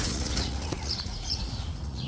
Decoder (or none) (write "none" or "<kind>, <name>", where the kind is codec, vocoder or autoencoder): vocoder, Vocos